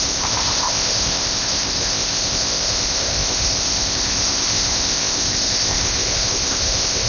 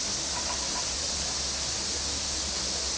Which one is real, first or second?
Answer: second